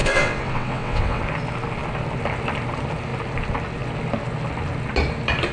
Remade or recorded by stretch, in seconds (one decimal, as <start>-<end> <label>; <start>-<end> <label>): 0.0-1.2 remade; 1.2-5.5 recorded